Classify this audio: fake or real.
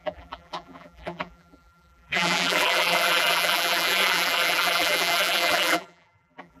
fake